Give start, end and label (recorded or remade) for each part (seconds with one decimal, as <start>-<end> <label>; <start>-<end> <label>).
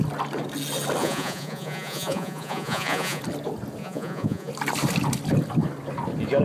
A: 0.0-1.0 recorded; 1.0-3.2 remade; 3.2-3.8 recorded; 3.8-4.5 remade; 4.5-6.4 recorded